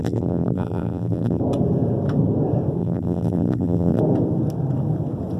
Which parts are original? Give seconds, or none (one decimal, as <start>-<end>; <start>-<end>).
1.4-2.8; 4.0-5.4